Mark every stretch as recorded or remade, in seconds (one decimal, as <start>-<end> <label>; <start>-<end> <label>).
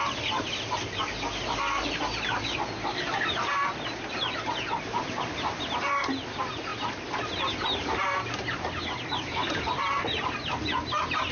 0.0-11.3 recorded